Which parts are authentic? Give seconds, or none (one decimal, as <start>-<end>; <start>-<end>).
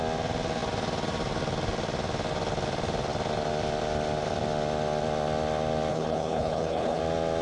0.0-5.9; 7.0-7.4